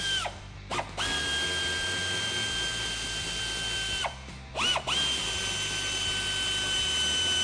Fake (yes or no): no